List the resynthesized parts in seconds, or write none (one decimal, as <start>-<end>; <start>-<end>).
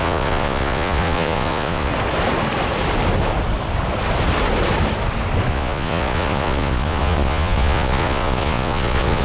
0.0-1.9; 5.5-9.2